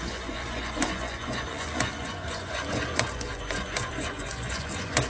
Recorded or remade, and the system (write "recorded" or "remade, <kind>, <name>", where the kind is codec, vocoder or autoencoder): remade, vocoder, Vocos